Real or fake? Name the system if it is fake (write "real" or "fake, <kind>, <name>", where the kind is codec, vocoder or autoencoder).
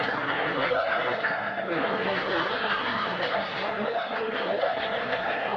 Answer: fake, codec, SNAC